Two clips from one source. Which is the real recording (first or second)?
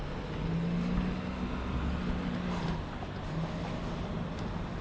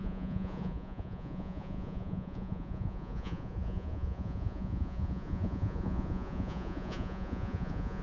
first